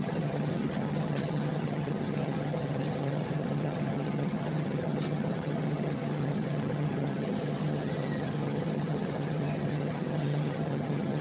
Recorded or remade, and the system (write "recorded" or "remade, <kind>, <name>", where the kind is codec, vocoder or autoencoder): remade, vocoder, HiFi-GAN